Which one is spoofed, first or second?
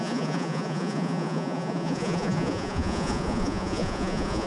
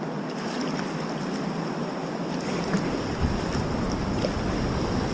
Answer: first